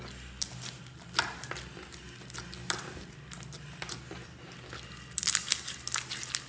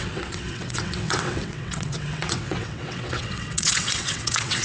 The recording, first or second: first